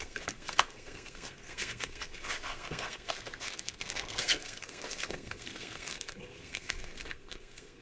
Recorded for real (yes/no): no